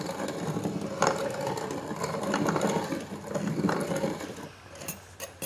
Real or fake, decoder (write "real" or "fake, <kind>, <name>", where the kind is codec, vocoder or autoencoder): real